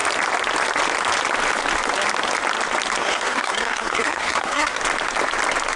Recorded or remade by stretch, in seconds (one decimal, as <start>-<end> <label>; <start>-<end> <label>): 0.0-3.0 recorded; 3.0-4.8 remade; 4.8-5.8 recorded